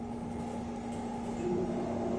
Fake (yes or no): no